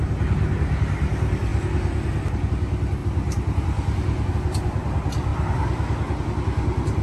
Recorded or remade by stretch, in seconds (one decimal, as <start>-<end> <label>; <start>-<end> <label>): 0.0-7.0 recorded